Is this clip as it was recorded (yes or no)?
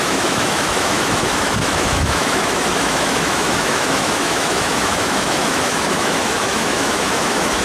no